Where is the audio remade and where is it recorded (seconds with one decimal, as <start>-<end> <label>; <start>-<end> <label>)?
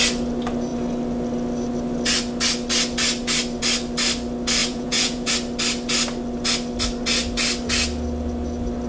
0.0-4.6 recorded; 4.6-5.3 remade; 5.3-8.9 recorded